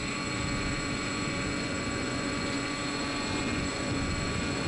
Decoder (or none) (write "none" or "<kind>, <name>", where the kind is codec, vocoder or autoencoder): vocoder, Vocos